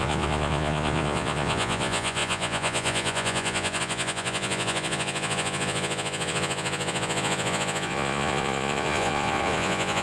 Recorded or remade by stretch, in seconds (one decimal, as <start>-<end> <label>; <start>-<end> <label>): 0.0-10.0 remade